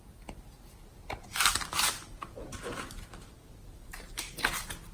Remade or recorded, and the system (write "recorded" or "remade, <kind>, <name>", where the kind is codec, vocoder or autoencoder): recorded